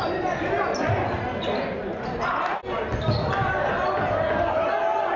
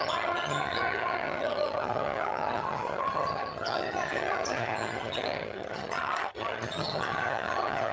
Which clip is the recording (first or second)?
first